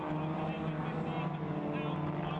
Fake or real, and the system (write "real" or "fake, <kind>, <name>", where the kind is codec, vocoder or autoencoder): real